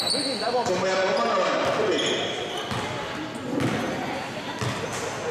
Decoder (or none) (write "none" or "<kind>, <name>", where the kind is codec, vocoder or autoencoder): none